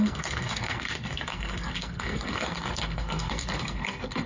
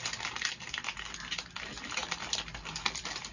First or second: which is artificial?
first